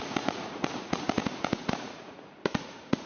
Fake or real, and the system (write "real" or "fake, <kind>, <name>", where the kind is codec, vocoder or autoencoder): fake, vocoder, Vocos